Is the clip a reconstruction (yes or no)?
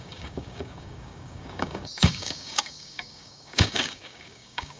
yes